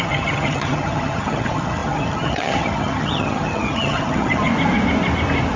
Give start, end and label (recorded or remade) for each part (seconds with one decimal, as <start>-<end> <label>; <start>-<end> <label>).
0.0-4.5 remade; 4.5-5.6 recorded

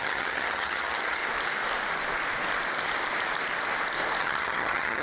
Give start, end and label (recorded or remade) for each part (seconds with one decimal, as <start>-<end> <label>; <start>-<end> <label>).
0.0-1.2 remade; 1.2-4.2 recorded; 4.2-5.0 remade

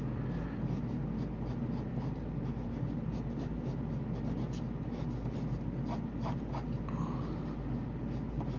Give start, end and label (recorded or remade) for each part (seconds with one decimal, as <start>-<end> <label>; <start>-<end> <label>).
0.0-8.6 recorded

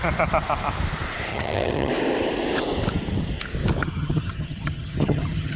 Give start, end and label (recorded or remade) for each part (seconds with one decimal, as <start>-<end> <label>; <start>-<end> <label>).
0.0-1.3 recorded; 1.3-1.9 remade; 1.9-3.8 recorded; 3.8-5.6 remade

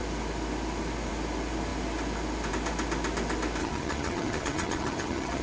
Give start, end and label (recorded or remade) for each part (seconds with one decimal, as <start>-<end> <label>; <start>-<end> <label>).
0.0-3.6 recorded; 3.6-5.4 remade

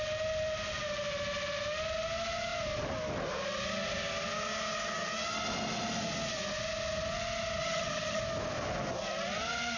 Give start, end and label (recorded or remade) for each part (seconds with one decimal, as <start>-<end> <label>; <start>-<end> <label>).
0.0-7.6 recorded; 7.6-8.2 remade; 8.2-9.8 recorded